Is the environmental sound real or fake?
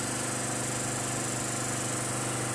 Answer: real